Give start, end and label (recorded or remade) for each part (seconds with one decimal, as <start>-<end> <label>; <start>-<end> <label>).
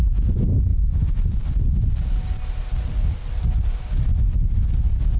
0.0-5.2 recorded